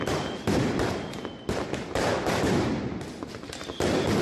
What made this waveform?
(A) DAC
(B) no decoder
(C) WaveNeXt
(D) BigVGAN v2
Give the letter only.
D